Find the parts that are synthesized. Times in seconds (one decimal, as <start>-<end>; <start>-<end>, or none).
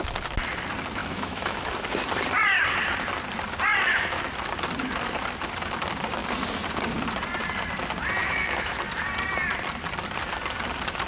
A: 1.0-1.6; 8.2-8.8